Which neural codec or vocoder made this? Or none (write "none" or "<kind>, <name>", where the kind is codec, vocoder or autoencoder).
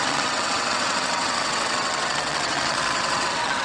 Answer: vocoder, WaveNeXt